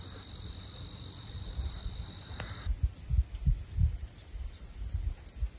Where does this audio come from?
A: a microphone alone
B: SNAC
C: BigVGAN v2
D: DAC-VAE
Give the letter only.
A